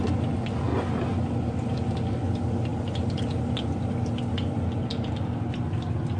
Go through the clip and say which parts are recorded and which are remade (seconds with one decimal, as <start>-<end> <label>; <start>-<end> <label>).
0.0-6.2 recorded